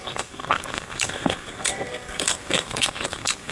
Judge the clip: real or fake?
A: fake